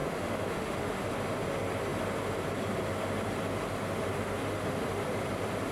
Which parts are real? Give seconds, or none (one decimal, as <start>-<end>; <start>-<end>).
1.1-4.1; 4.9-5.7